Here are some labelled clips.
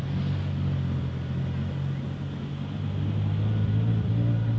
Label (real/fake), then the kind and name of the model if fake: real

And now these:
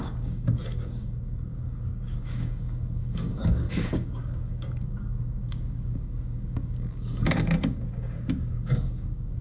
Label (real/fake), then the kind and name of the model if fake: fake, codec, DAC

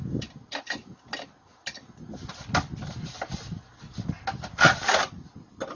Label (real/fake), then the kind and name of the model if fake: real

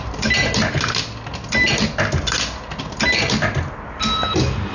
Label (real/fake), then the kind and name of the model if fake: real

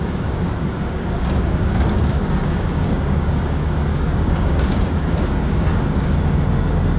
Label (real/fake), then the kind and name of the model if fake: fake, codec, DAC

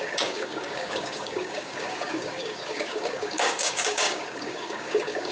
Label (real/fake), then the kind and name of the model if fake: fake, codec, DAC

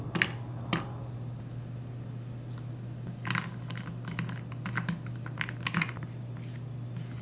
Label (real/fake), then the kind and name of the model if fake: real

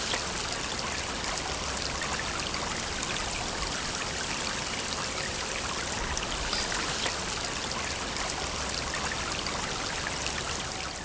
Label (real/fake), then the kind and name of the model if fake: real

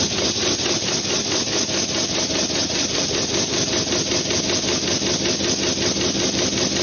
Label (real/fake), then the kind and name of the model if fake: real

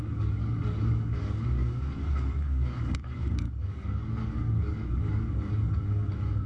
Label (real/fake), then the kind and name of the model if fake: fake, codec, DAC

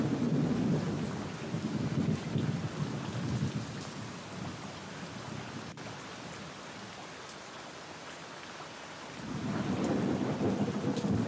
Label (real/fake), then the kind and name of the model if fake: real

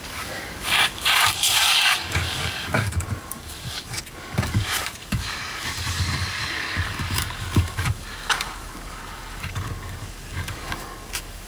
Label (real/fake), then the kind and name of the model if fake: fake, codec, DAC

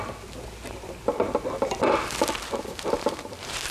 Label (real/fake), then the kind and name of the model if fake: real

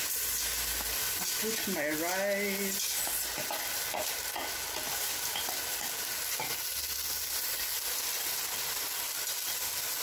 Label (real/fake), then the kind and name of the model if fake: real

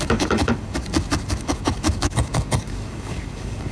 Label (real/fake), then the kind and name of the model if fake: fake, codec, DAC